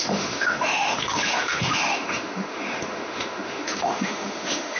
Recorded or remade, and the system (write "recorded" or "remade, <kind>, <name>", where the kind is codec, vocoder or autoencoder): remade, autoencoder, DAC-VAE